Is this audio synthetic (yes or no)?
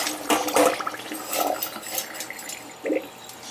no